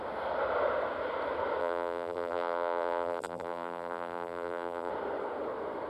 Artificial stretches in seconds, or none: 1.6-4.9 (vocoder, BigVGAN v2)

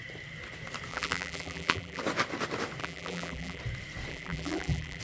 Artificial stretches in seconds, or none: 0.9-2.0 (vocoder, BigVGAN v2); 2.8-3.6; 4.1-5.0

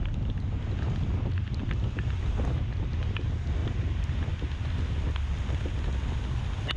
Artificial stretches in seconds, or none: 1.6-2.3 (vocoder, BigVGAN v2); 3.6-4.1

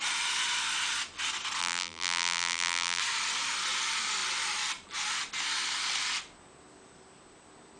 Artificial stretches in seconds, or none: 1.6-3.0 (vocoder, BigVGAN v2)

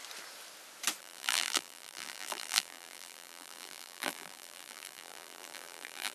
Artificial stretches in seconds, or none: 1.0-6.1 (vocoder, BigVGAN v2)

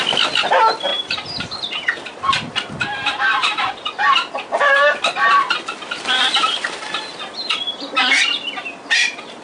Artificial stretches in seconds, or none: 0.0-9.4 (vocoder, BigVGAN v2)